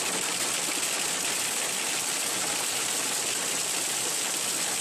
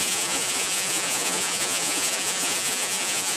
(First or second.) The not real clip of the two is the second